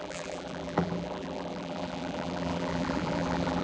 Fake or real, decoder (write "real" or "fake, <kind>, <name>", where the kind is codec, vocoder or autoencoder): fake, vocoder, BigVGAN v2